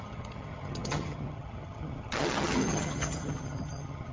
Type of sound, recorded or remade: remade